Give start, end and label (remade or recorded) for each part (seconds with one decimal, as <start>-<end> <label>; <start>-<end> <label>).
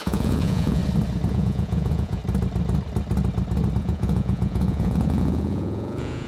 0.0-0.8 remade; 0.8-1.3 recorded; 1.3-2.2 remade; 2.2-3.8 recorded; 3.8-6.3 remade